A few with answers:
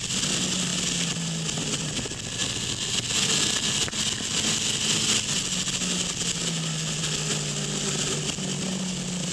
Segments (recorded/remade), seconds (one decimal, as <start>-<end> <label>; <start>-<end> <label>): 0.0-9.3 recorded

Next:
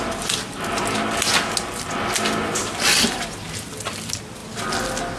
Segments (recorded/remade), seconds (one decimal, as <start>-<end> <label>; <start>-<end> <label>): 0.0-5.2 recorded

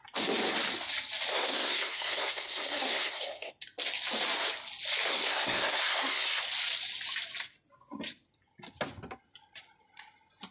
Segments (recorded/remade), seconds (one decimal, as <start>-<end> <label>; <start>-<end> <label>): 0.0-1.3 recorded; 1.3-3.5 remade; 3.5-5.1 recorded; 5.1-6.4 remade; 6.4-10.5 recorded

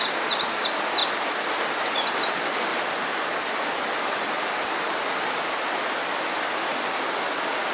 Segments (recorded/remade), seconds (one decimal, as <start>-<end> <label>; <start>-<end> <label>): 0.0-7.7 recorded

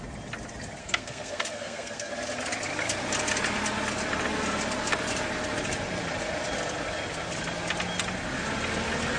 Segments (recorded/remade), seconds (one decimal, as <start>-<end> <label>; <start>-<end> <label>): 0.0-0.8 recorded; 0.8-2.1 remade; 2.1-9.2 recorded

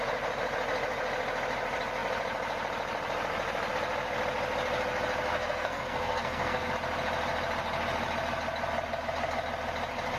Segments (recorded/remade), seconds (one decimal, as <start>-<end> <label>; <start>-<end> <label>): 0.0-5.3 recorded; 5.3-6.7 remade; 6.7-10.2 recorded

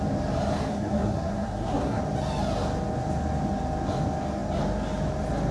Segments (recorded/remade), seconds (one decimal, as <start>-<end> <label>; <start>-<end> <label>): 0.0-0.7 recorded; 0.7-2.0 remade; 2.0-5.5 recorded